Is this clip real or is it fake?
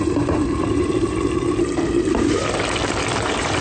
fake